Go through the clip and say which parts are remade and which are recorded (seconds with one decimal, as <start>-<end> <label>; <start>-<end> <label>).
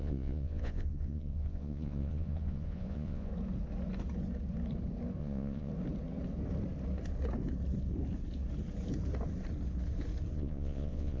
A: 0.0-3.3 remade; 3.3-5.2 recorded; 5.2-5.7 remade; 5.7-10.3 recorded; 10.3-11.2 remade